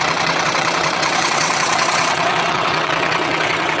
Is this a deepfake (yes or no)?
yes